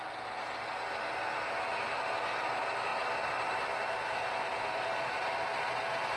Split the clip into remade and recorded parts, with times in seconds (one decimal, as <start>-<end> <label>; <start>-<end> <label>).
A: 0.0-6.2 recorded

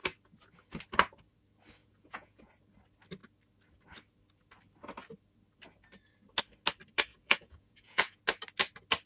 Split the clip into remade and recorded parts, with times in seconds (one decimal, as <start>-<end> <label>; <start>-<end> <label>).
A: 0.0-1.8 recorded; 1.8-2.5 remade; 2.5-7.1 recorded; 7.1-8.2 remade; 8.2-9.1 recorded

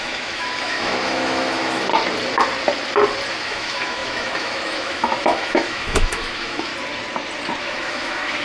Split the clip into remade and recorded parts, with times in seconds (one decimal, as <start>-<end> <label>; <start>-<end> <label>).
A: 0.0-1.9 remade; 1.9-3.3 recorded; 3.3-6.7 remade; 6.7-7.6 recorded; 7.6-8.4 remade